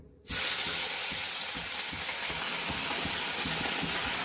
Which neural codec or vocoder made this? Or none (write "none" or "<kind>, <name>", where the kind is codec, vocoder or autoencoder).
none